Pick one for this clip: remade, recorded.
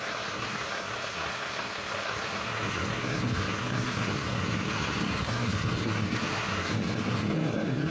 remade